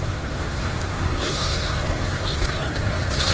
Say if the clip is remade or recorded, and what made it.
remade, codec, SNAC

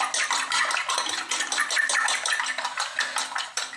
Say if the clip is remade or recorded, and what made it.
recorded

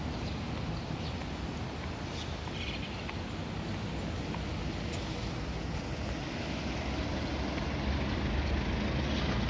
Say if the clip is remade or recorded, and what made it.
recorded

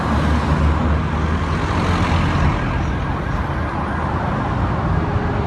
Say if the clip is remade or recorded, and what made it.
recorded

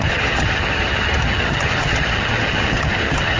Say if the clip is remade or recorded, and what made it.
remade, vocoder, HiFi-GAN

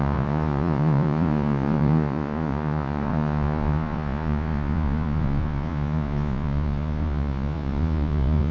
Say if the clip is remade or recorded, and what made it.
remade, vocoder, Vocos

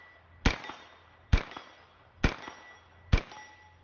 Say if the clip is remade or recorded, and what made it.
recorded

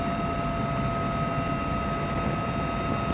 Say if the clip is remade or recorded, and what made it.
recorded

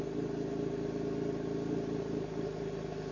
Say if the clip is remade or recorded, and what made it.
recorded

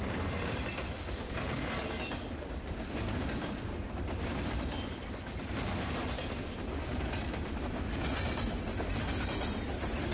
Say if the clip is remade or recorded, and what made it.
recorded